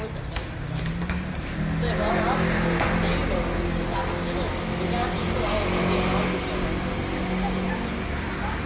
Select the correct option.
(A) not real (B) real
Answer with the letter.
B